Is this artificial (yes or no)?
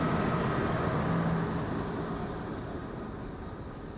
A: no